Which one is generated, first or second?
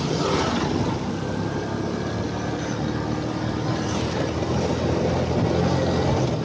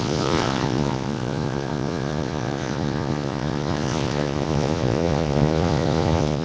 second